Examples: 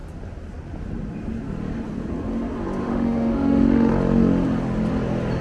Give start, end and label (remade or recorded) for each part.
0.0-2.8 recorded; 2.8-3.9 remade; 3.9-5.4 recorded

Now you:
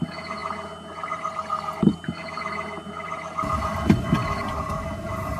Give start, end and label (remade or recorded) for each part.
0.0-5.4 recorded

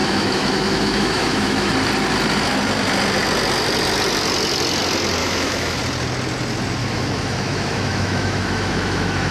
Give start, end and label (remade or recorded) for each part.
0.0-1.7 remade; 1.7-5.2 recorded; 5.2-5.8 remade; 5.8-6.8 recorded; 6.8-9.3 remade

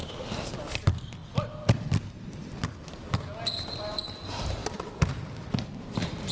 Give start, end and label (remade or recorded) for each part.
0.0-0.5 remade; 0.5-6.3 recorded

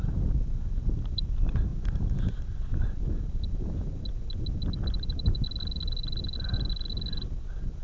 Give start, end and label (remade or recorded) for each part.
0.0-7.8 recorded

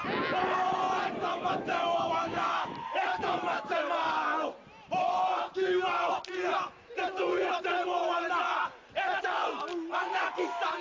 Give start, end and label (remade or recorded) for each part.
0.0-1.2 recorded; 1.2-2.7 remade; 2.7-3.1 recorded; 3.1-3.8 remade; 3.8-10.8 recorded

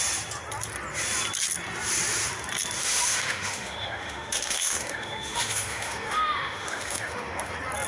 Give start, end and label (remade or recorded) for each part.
0.0-2.8 recorded; 2.8-7.5 remade; 7.5-7.9 recorded

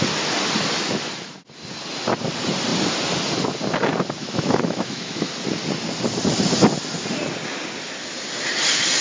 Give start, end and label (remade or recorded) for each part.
0.0-4.2 recorded; 4.2-5.3 remade; 5.3-9.0 recorded